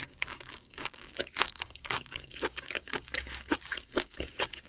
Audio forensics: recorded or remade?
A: remade